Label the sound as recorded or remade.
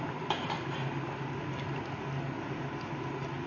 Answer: recorded